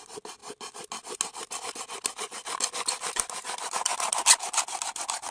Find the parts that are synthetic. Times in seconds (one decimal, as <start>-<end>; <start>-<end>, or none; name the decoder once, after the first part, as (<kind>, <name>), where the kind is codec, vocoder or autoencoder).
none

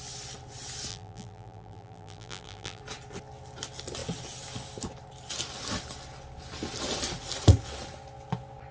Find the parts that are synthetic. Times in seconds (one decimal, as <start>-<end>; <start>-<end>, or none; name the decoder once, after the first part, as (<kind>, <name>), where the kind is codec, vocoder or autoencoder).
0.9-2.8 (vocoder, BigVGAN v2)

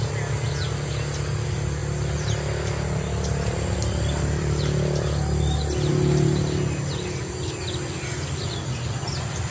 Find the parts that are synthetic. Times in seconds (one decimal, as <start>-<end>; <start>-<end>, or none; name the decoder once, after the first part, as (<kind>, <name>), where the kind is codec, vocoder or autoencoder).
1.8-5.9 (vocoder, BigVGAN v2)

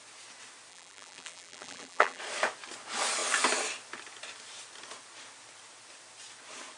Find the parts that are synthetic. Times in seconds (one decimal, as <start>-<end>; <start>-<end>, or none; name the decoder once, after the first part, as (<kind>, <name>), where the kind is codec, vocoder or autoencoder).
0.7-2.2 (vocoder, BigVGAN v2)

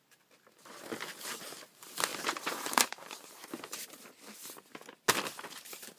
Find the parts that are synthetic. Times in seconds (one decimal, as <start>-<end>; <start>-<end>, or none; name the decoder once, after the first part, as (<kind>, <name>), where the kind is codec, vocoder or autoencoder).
2.1-3.5 (vocoder, BigVGAN v2)